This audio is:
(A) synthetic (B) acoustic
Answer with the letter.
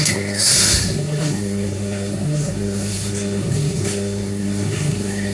A